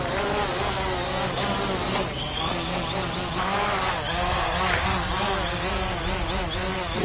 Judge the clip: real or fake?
real